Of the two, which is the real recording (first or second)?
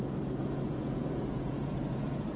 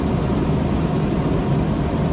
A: second